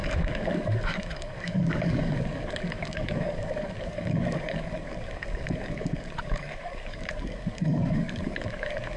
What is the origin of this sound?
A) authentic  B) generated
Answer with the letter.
B